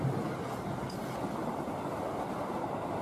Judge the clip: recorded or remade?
recorded